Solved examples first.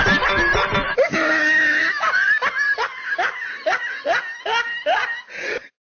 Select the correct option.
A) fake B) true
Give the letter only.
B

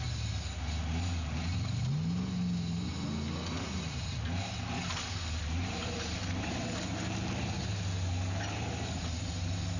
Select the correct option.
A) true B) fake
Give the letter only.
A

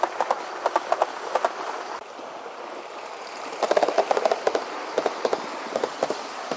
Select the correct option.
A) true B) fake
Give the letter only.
A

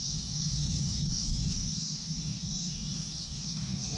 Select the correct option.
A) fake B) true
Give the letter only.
A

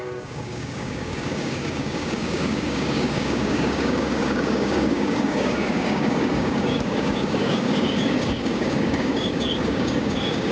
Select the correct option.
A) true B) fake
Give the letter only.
B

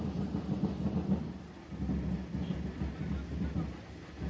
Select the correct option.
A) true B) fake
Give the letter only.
A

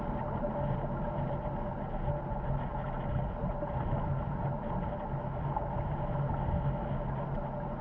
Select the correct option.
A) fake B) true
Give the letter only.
B